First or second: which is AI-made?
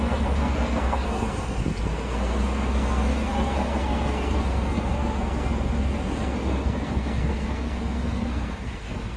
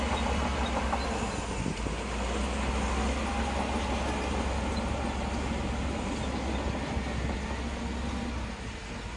first